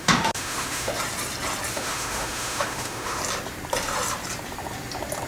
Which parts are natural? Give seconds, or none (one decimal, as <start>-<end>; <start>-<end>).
0.9-1.7; 3.2-5.3